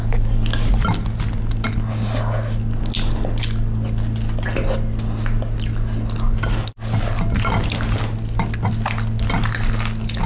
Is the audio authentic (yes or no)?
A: yes